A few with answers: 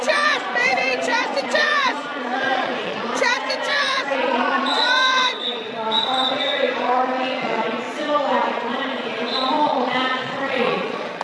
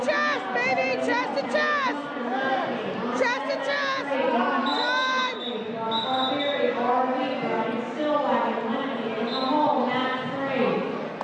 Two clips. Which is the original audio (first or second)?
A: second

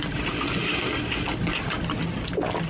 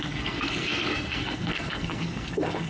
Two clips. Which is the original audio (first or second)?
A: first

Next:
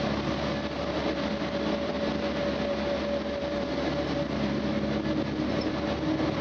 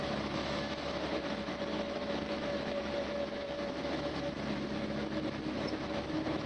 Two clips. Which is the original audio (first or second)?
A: first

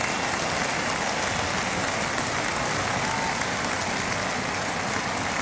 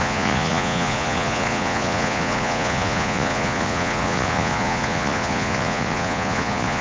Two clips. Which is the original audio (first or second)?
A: first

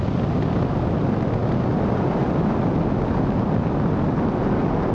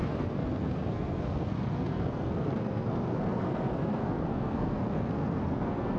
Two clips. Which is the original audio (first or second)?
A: first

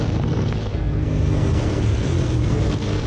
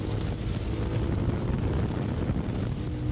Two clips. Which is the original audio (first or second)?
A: second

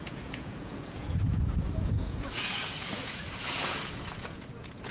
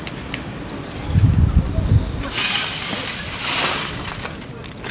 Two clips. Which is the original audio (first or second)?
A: second